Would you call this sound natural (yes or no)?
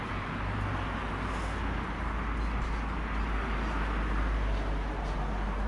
yes